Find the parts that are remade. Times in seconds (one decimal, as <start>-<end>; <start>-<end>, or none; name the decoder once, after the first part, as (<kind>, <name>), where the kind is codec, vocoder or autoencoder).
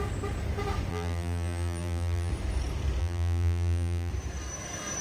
0.9-2.3 (vocoder, BigVGAN v2); 3.0-4.1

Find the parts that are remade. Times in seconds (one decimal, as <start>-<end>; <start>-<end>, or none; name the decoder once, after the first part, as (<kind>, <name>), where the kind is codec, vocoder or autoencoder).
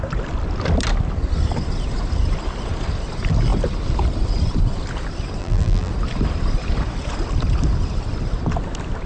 5.4-5.9 (vocoder, BigVGAN v2)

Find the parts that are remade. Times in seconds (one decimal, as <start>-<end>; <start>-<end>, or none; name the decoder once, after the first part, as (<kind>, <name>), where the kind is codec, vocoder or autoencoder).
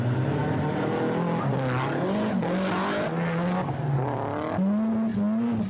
none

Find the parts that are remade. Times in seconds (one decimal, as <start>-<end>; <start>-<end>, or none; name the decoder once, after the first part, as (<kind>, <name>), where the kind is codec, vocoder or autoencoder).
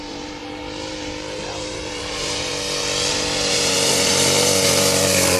0.0-0.4 (vocoder, BigVGAN v2); 1.4-2.5; 3.1-5.4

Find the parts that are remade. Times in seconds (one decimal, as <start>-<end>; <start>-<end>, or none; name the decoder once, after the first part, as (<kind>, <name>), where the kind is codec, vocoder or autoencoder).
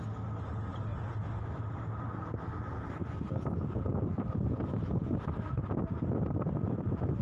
none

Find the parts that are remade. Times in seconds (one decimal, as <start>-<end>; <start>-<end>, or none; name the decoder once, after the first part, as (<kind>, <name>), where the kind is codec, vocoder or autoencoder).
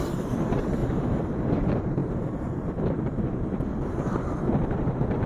none